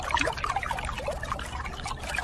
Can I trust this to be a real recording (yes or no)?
yes